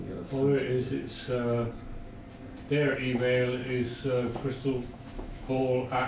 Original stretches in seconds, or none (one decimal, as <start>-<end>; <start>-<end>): 0.0-3.6; 5.5-6.1